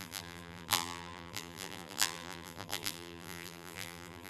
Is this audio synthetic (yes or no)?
yes